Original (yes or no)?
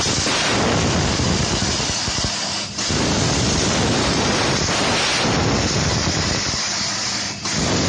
yes